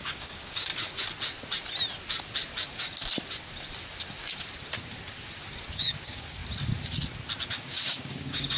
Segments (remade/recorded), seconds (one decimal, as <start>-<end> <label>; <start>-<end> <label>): 0.0-0.7 remade; 0.7-5.7 recorded; 5.7-6.4 remade; 6.4-7.5 recorded; 7.5-8.6 remade